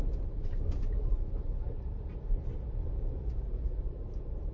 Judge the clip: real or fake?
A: fake